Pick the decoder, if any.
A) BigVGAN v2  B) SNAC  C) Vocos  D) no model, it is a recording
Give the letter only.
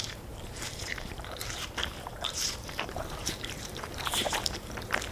A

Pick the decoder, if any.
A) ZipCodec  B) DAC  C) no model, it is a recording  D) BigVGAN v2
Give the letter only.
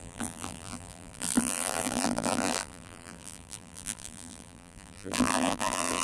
D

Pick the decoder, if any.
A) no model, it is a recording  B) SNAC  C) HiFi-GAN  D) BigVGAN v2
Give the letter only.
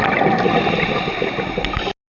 A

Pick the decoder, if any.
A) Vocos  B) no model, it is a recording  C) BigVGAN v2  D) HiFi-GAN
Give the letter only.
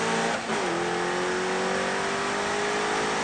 B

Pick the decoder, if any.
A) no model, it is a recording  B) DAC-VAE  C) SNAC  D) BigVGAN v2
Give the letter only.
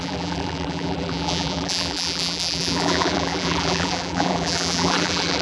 D